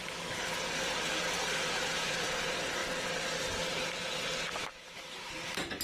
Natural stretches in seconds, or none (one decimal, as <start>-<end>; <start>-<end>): 0.0-4.6; 5.3-5.8